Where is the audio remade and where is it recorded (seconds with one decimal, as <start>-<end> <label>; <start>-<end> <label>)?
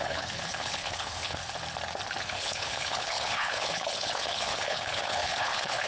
0.0-1.4 remade; 1.4-2.2 recorded; 2.2-5.9 remade